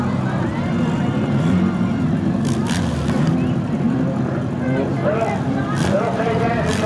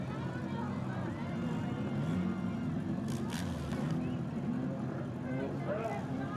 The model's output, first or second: first